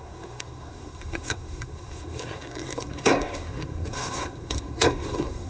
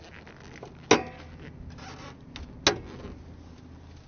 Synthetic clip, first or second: first